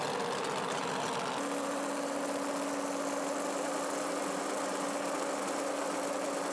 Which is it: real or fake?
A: real